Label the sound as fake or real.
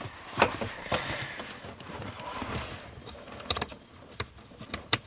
fake